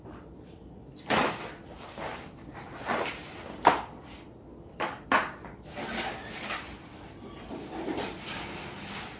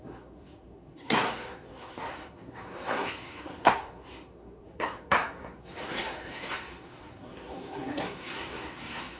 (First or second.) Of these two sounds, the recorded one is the first